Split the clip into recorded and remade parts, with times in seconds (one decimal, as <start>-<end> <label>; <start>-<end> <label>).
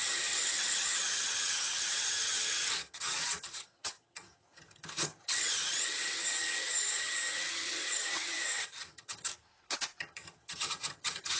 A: 0.0-9.3 remade; 9.3-10.0 recorded; 10.0-11.4 remade